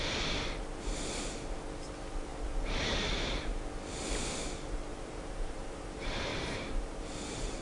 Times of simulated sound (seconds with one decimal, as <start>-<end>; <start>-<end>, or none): 4.9-5.8; 6.3-7.6